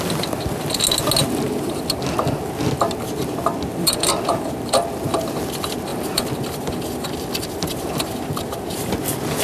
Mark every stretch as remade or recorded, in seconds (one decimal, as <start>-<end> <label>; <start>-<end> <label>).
0.0-1.2 recorded; 1.2-2.5 remade; 2.5-3.7 recorded; 3.7-4.8 remade; 4.8-5.9 recorded; 5.9-8.9 remade; 8.9-9.4 recorded